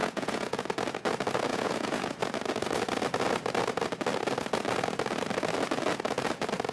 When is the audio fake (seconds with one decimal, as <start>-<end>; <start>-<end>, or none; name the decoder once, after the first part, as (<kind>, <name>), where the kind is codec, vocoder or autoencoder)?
0.0-0.6 (vocoder, Vocos); 1.5-2.2